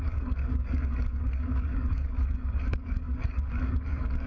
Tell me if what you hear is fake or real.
fake